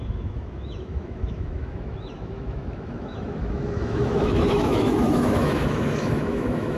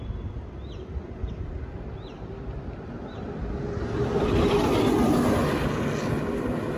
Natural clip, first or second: second